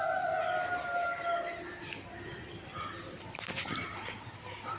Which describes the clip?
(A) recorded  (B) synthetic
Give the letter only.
A